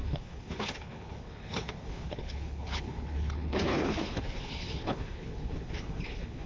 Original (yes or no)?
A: no